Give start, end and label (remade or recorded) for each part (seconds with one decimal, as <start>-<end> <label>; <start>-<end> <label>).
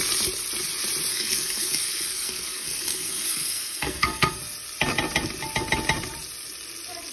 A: 0.0-1.1 recorded; 1.1-4.4 remade; 4.4-7.1 recorded